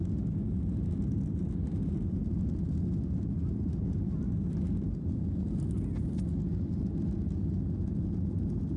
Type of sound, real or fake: real